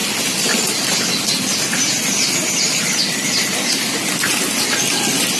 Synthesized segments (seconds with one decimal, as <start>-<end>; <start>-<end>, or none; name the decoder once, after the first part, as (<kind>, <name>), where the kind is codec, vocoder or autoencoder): none